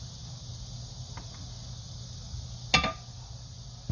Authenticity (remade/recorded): recorded